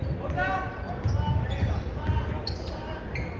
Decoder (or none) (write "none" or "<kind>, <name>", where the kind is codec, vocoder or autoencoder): none